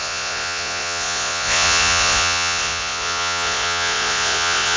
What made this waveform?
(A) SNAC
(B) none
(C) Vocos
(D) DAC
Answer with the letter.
C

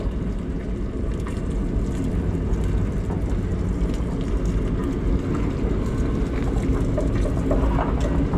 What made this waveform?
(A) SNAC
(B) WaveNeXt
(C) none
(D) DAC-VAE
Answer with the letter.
C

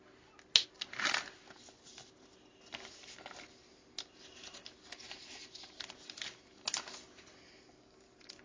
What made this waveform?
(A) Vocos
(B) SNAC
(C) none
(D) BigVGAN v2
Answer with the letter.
C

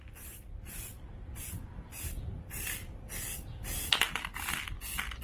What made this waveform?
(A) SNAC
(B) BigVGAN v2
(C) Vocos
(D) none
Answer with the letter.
D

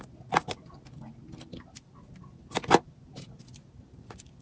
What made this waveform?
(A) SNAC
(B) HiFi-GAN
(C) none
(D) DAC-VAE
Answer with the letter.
C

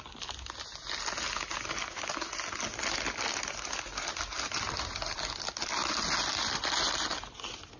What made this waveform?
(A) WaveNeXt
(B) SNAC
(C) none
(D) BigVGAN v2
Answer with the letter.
C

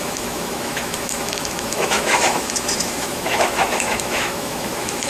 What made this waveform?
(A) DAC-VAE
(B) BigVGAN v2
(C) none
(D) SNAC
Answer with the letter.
A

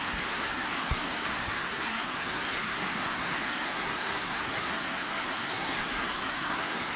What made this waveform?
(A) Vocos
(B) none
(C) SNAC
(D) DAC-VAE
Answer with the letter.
C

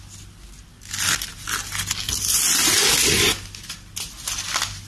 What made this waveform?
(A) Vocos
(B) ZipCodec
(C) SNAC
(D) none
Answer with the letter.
D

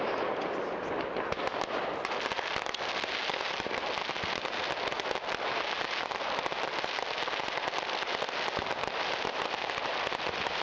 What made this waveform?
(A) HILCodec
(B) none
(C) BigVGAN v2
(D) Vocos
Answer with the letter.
B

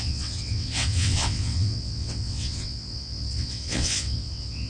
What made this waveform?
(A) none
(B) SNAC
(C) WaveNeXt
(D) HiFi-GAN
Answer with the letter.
C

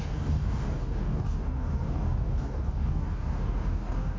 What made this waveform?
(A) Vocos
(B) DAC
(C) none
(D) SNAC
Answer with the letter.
B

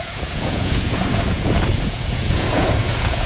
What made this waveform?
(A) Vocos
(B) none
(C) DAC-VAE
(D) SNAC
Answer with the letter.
A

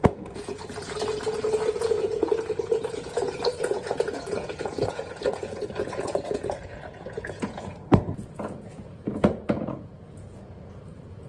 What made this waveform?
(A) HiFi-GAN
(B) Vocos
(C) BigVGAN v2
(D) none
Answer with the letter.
B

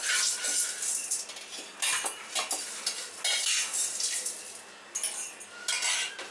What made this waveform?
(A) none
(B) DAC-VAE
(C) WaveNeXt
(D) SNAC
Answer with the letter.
A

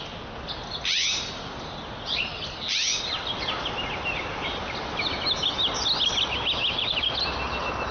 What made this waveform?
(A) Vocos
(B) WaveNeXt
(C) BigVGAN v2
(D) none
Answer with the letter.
D